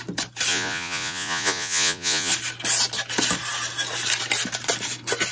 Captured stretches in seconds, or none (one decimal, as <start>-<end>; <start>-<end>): 0.0-0.5; 2.3-5.3